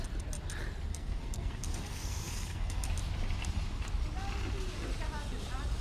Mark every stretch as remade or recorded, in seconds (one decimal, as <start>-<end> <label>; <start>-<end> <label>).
0.0-0.9 recorded; 0.9-2.9 remade; 2.9-5.8 recorded